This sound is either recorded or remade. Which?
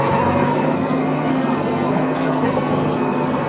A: remade